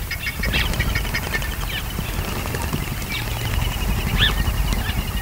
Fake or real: real